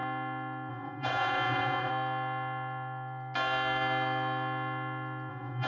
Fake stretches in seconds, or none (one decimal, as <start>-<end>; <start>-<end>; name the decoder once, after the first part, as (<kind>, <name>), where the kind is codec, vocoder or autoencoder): 0.7-1.9 (vocoder, Vocos); 5.3-5.7